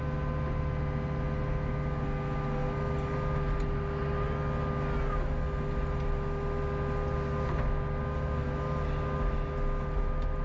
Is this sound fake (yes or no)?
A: no